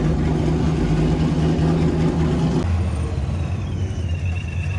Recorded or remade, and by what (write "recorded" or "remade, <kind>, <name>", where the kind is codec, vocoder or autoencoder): recorded